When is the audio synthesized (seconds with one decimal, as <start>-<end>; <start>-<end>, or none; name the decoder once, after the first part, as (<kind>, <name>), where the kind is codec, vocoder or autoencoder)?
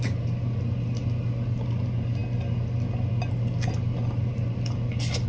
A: none